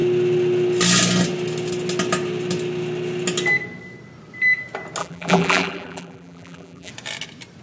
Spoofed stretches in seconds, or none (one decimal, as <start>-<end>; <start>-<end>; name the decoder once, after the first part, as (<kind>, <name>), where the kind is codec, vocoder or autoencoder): 5.0-6.9 (vocoder, BigVGAN v2)